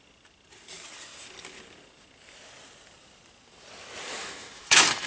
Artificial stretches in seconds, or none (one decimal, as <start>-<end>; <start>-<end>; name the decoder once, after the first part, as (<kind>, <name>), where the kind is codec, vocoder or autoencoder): 4.2-5.1 (autoencoder, DAC-VAE)